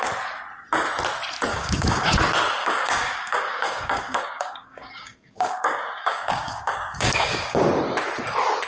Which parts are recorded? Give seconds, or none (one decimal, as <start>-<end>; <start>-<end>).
0.0-1.5; 2.1-2.6; 7.6-8.7